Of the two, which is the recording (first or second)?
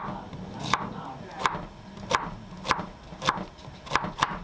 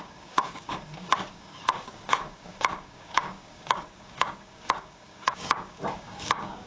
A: first